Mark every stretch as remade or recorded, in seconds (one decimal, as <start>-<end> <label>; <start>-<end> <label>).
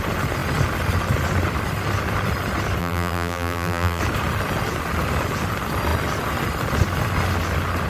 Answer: 0.0-2.8 recorded; 2.8-4.0 remade; 4.0-7.9 recorded